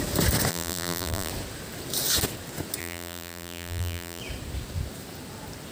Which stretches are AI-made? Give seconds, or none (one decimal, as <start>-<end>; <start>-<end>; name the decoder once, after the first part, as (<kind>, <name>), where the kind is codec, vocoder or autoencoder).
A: 0.5-1.3 (vocoder, BigVGAN v2); 2.8-4.2

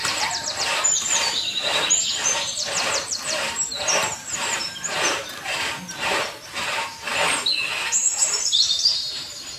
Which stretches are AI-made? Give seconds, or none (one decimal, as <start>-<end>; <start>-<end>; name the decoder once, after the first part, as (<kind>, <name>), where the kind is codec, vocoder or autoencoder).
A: 0.0-6.9 (vocoder, BigVGAN v2); 8.0-9.6

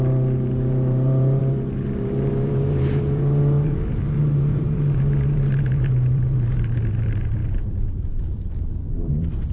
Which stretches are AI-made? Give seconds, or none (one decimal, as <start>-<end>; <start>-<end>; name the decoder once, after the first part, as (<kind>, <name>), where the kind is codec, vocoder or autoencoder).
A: 0.0-9.5 (vocoder, BigVGAN v2)

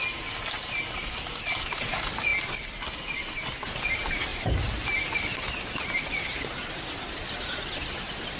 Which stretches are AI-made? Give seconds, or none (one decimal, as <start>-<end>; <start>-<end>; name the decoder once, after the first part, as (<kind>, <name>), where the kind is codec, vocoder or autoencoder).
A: none

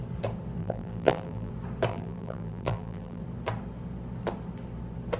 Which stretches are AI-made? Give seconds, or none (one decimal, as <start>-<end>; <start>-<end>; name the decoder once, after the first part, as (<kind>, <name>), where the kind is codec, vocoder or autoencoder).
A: 0.6-1.5 (vocoder, BigVGAN v2); 1.9-3.2